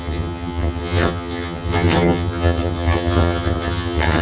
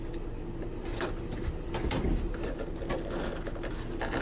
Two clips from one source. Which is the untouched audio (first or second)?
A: second